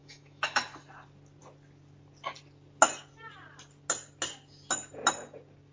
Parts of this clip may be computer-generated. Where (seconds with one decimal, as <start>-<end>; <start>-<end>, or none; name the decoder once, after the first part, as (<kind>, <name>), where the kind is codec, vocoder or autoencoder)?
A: 0.0-0.6 (autoencoder, DAC-VAE)